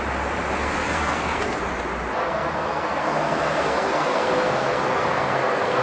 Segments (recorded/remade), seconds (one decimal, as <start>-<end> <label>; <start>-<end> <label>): 0.0-0.6 recorded; 0.6-1.6 remade; 1.6-2.2 recorded; 2.2-5.8 remade